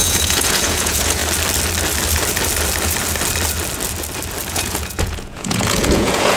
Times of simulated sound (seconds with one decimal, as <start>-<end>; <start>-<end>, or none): 0.0-1.2; 4.5-6.4